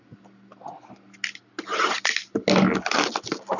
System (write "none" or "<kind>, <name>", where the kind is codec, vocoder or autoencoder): none